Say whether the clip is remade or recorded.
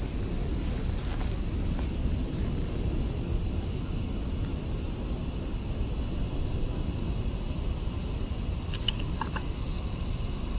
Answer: recorded